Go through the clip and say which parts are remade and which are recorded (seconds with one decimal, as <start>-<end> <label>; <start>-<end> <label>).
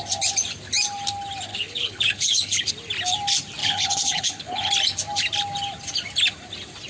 0.0-1.5 recorded; 1.5-2.7 remade; 2.7-3.6 recorded; 3.6-4.7 remade; 4.7-6.9 recorded